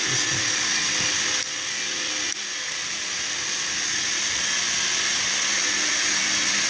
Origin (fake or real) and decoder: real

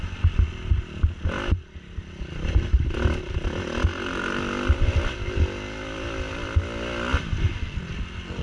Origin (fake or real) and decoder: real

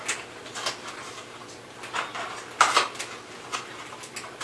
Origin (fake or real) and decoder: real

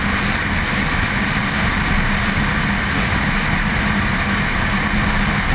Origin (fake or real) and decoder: real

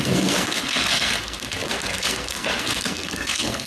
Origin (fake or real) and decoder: fake, codec, SNAC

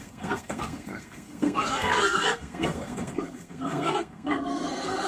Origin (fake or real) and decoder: fake, codec, SNAC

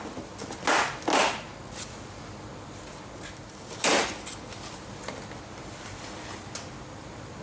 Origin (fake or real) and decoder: real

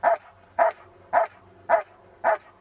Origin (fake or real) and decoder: real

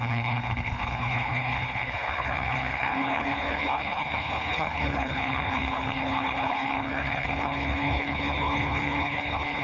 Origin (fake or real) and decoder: fake, codec, HILCodec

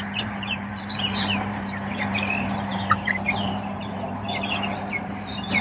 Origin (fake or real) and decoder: fake, vocoder, BigVGAN v2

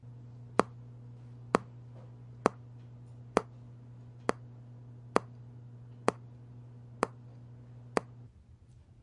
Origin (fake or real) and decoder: real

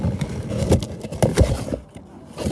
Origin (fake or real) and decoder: real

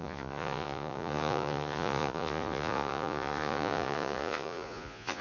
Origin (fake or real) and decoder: fake, vocoder, Vocos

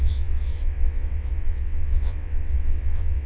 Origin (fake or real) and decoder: fake, vocoder, WaveNeXt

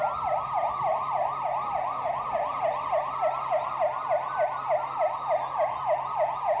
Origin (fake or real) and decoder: real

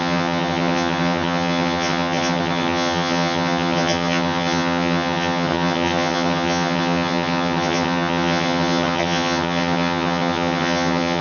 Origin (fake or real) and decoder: fake, vocoder, HiFi-GAN